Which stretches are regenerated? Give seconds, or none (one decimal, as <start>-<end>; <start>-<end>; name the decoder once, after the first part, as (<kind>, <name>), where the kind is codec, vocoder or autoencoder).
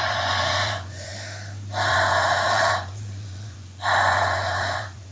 0.0-1.1 (vocoder, Vocos); 1.9-5.1